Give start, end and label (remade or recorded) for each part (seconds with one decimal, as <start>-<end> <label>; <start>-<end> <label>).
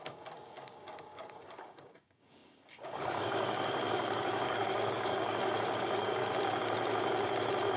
0.0-6.2 remade; 6.2-7.8 recorded